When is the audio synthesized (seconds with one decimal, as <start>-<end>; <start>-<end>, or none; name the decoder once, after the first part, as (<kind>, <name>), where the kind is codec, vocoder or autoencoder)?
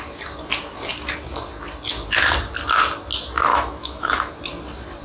3.5-4.3 (autoencoder, DAC-VAE)